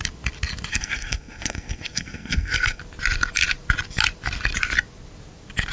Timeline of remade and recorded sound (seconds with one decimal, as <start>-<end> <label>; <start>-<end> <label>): 0.0-0.7 recorded; 0.7-2.8 remade; 2.8-5.7 recorded